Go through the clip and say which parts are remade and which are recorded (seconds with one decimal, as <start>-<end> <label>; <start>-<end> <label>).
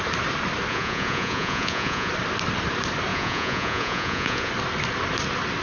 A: 0.0-0.7 recorded; 0.7-2.1 remade; 2.1-3.1 recorded; 3.1-4.5 remade; 4.5-5.6 recorded